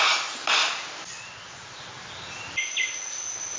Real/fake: real